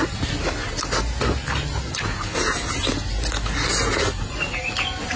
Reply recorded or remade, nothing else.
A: recorded